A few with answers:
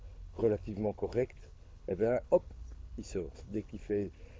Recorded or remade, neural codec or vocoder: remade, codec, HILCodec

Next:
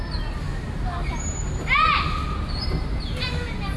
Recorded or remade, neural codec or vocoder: recorded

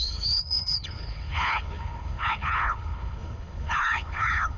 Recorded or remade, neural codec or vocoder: remade, codec, HILCodec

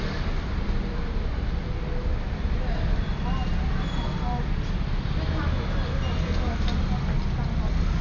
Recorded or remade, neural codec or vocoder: recorded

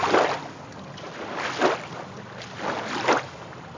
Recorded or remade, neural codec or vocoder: recorded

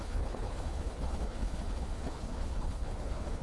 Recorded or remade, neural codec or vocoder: remade, codec, HILCodec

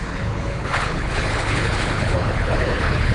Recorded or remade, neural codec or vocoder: remade, codec, HILCodec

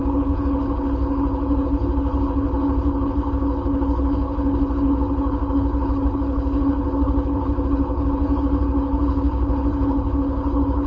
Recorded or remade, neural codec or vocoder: remade, codec, HILCodec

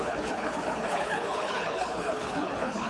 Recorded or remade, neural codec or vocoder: remade, codec, HILCodec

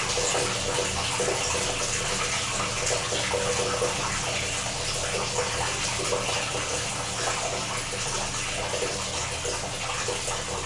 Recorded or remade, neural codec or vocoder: recorded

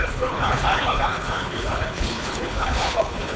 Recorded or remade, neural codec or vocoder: remade, codec, HILCodec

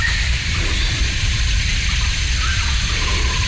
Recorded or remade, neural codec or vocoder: recorded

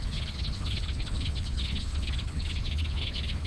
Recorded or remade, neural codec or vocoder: remade, codec, HILCodec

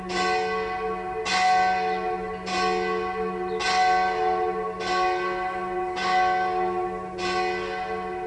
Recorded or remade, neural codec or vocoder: recorded